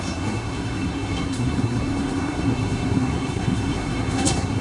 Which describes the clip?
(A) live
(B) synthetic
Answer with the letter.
B